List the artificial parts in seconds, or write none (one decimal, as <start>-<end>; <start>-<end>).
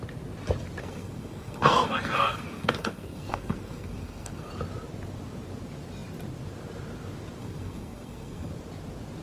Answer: 0.8-4.5; 7.4-8.5